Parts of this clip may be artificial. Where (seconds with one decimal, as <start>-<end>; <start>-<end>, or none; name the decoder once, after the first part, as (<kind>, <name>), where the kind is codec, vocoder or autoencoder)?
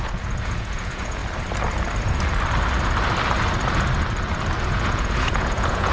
0.0-1.2 (vocoder, Vocos); 4.6-5.9